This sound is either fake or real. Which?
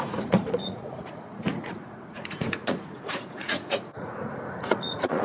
fake